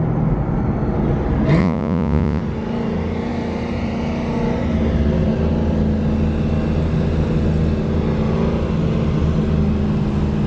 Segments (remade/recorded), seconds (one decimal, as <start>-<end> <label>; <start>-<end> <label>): 0.0-1.6 recorded; 1.6-2.4 remade; 2.4-10.5 recorded